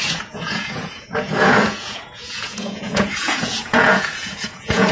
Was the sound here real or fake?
fake